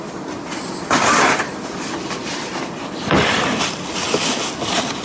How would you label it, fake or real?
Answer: fake